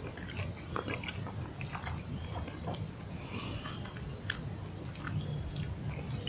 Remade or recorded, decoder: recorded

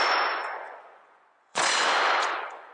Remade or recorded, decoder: remade, vocoder, Vocos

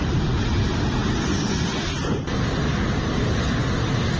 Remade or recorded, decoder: recorded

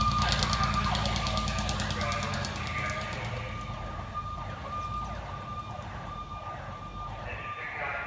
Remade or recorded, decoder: recorded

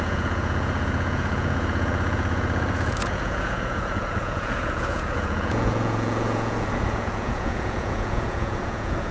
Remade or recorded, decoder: remade, vocoder, Vocos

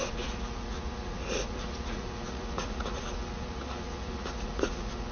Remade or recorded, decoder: remade, vocoder, Vocos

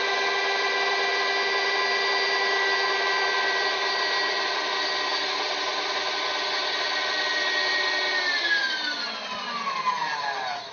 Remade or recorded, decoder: recorded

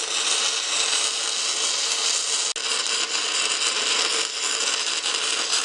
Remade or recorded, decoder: recorded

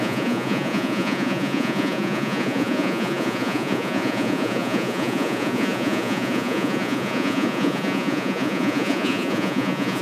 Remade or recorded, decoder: remade, vocoder, Vocos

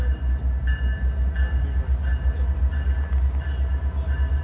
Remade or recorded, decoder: recorded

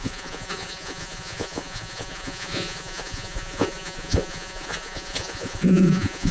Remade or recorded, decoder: remade, vocoder, Vocos